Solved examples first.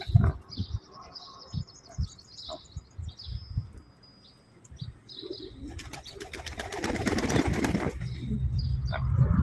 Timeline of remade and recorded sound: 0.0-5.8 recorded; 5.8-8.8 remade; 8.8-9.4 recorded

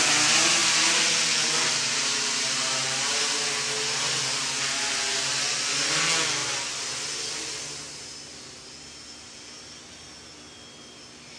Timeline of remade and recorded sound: 0.0-0.6 recorded; 0.6-3.2 remade; 3.2-11.4 recorded